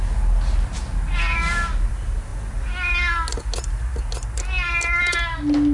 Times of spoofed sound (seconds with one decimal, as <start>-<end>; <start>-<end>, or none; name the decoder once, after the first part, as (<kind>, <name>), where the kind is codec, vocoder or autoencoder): none